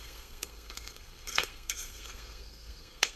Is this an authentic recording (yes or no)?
no